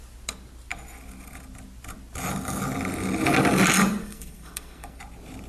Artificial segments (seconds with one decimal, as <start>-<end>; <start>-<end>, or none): 4.0-5.0